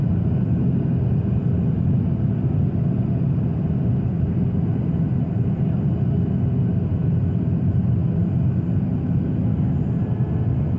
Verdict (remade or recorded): recorded